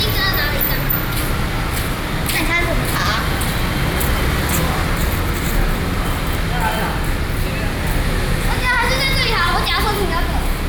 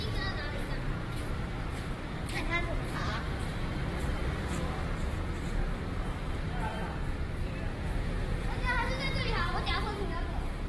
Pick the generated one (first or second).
second